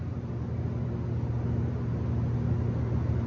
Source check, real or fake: real